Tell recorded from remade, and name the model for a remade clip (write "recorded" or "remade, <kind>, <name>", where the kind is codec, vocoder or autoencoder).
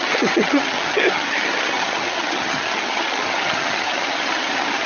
remade, vocoder, HiFi-GAN